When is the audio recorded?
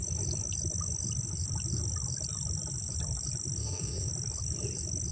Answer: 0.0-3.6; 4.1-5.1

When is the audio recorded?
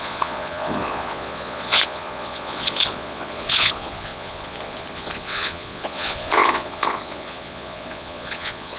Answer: none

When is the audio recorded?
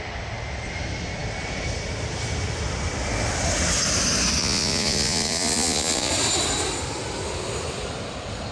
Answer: 0.0-4.4; 6.1-8.5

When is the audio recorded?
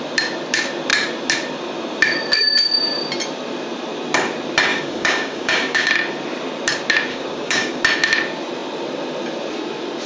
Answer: 0.0-4.7; 5.9-7.1; 7.8-10.1